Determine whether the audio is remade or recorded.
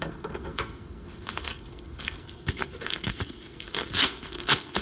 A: remade